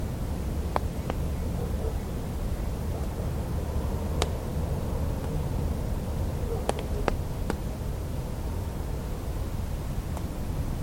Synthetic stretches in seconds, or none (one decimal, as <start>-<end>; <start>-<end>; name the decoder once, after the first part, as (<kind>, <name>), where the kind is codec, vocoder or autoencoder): none